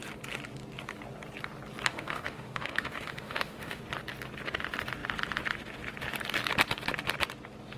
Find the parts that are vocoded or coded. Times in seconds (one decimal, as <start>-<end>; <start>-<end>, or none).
1.9-3.8